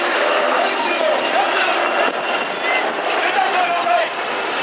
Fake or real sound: real